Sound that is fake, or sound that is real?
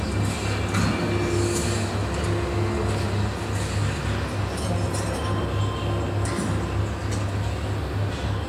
real